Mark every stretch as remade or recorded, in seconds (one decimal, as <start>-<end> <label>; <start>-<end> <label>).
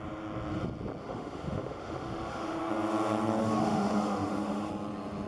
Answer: 0.0-1.0 recorded; 1.0-2.7 remade; 2.7-3.4 recorded; 3.4-4.7 remade; 4.7-5.3 recorded